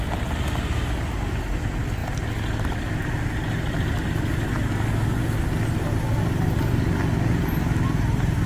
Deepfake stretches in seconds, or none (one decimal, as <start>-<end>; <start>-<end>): none